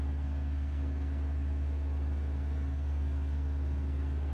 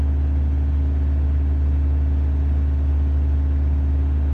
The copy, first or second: first